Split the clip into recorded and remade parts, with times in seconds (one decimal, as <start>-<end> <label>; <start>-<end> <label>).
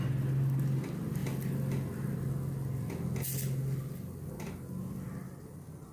0.0-5.9 recorded